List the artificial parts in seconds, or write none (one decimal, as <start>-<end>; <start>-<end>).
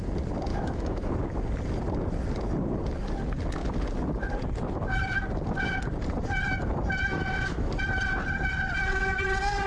0.5-1.1; 7.1-7.7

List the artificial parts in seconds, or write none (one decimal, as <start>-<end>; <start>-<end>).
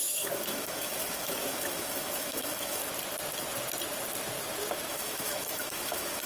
0.0-2.8; 4.9-6.3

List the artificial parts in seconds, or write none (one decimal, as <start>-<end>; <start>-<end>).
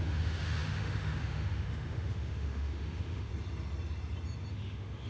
0.0-3.3; 4.5-5.1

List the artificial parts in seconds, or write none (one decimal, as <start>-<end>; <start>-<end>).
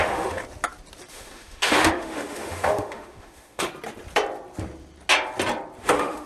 0.0-0.4; 1.1-3.7; 5.8-6.3